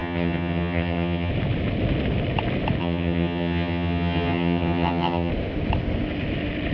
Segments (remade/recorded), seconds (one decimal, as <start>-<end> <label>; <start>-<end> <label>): 0.0-1.3 remade; 1.3-2.8 recorded; 2.8-5.3 remade; 5.3-6.7 recorded